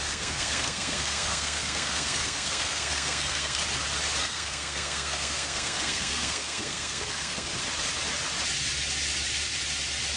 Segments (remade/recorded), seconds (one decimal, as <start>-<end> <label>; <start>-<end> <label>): 0.0-3.6 remade; 3.6-4.2 recorded; 4.2-7.5 remade; 7.5-10.2 recorded